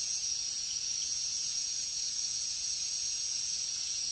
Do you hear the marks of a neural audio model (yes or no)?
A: yes